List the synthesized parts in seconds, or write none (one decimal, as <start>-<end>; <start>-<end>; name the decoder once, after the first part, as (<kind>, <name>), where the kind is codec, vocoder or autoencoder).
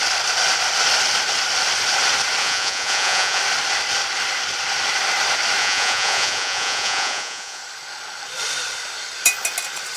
2.4-3.4 (vocoder, Vocos); 5.6-7.6